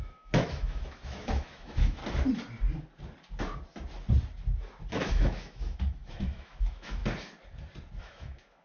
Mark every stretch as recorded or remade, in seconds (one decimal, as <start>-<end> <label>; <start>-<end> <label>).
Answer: 0.0-2.0 remade; 2.0-4.9 recorded; 4.9-7.0 remade; 7.0-8.0 recorded; 8.0-8.6 remade